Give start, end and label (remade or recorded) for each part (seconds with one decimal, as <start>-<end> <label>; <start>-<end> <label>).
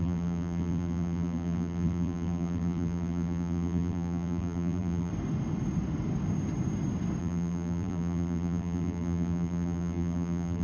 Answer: 0.0-5.1 remade; 5.1-7.2 recorded; 7.2-10.6 remade